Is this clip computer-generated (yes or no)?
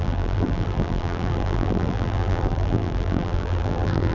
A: yes